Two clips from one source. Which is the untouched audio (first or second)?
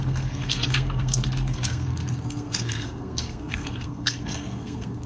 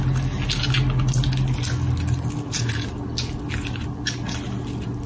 second